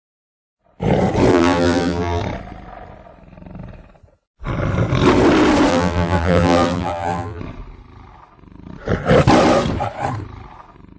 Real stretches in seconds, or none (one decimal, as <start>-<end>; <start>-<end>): 0.0-1.3; 2.2-5.7; 7.4-11.0